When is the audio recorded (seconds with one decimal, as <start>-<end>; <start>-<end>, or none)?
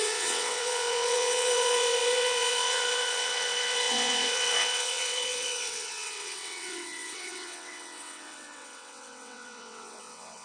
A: none